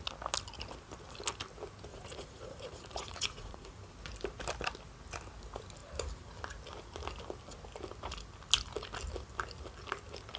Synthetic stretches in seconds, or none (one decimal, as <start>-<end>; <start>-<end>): 1.9-3.9